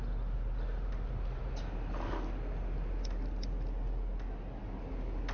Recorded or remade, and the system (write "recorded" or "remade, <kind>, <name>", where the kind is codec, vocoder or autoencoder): recorded